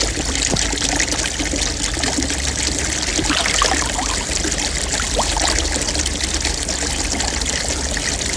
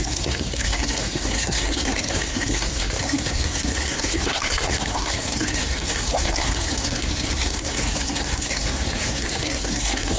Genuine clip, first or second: first